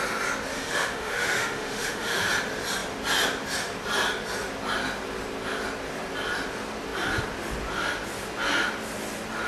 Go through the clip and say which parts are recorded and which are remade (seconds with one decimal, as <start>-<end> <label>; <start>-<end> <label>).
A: 0.0-0.5 recorded; 0.5-2.3 remade; 2.3-9.5 recorded